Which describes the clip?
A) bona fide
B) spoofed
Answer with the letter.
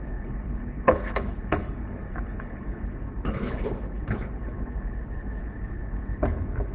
B